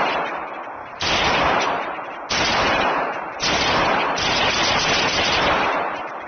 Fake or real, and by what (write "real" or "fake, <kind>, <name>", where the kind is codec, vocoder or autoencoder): fake, vocoder, BigVGAN v2